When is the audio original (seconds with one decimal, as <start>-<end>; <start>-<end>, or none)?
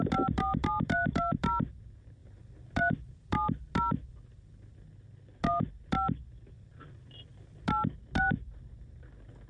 0.0-9.5